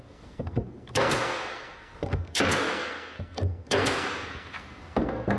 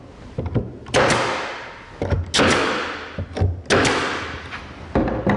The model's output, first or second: first